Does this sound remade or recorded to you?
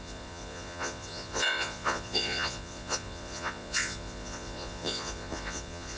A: remade